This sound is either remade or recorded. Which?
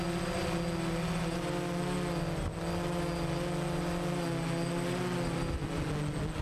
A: recorded